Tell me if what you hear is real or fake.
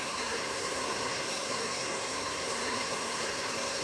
fake